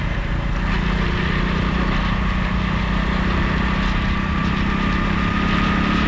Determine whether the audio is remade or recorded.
recorded